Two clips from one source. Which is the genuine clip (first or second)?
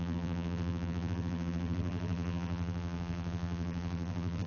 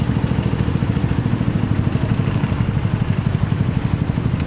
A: second